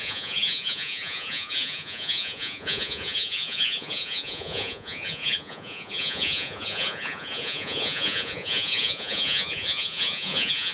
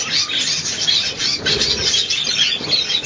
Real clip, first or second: second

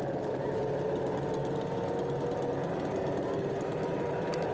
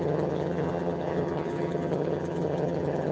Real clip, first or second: first